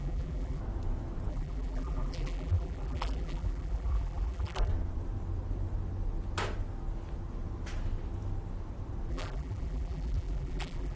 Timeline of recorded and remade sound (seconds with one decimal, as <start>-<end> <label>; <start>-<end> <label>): 0.0-0.6 remade; 0.6-1.3 recorded; 1.3-4.7 remade; 4.7-9.1 recorded; 9.1-11.0 remade